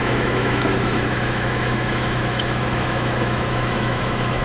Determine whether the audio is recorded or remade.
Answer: remade